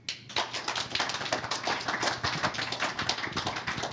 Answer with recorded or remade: recorded